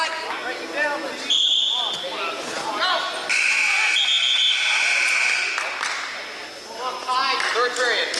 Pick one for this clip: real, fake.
real